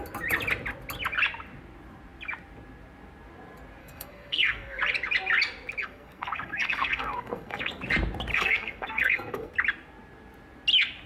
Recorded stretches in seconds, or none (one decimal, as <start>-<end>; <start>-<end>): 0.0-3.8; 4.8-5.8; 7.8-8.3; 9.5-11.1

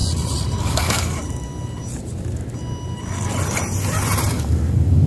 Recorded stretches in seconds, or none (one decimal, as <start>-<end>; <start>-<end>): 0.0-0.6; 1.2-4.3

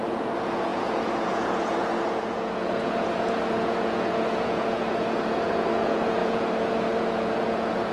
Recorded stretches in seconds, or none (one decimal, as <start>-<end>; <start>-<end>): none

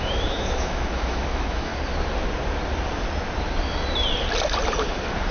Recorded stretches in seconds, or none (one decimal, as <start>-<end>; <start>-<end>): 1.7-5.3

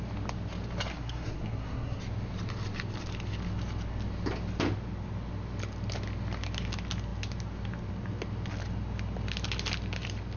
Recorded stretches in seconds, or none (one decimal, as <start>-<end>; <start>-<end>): 0.0-0.9; 2.0-10.4

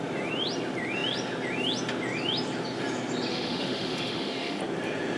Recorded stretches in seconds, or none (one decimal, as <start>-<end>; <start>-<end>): 0.0-3.3; 4.6-5.2

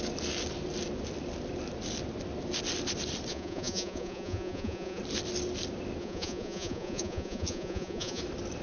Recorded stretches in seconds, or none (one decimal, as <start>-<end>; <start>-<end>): 0.0-3.3; 5.0-6.0; 8.2-8.6

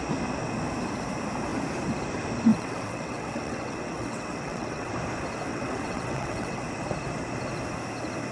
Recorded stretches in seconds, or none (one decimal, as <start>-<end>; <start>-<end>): 0.0-2.5; 4.9-5.5; 6.6-8.3